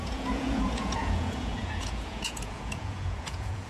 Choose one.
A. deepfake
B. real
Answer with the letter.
A